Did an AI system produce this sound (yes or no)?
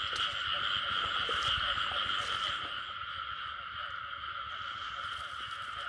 no